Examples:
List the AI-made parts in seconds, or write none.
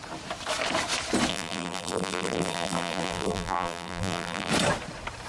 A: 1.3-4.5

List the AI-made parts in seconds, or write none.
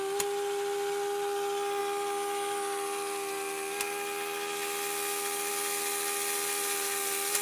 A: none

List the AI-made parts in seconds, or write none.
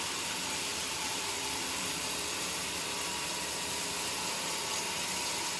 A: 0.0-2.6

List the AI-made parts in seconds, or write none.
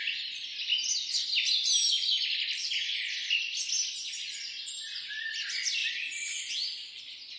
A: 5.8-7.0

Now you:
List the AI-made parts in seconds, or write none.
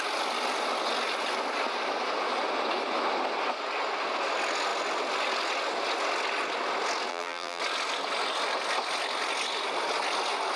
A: 7.1-7.6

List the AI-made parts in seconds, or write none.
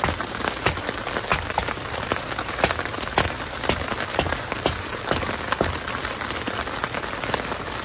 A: none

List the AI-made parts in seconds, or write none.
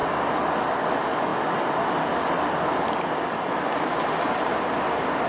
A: none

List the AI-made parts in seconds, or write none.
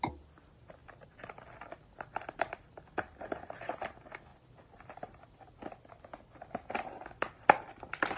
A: 0.8-3.4; 4.3-5.5